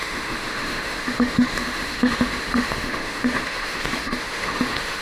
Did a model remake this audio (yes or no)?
yes